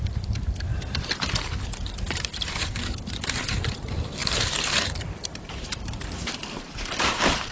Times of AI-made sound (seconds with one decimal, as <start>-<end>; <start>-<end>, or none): 0.0-7.5